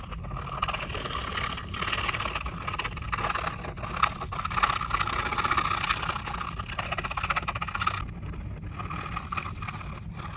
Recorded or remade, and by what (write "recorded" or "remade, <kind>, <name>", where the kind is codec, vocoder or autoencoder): recorded